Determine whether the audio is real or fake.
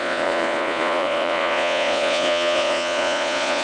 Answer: fake